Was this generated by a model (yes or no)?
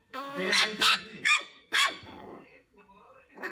yes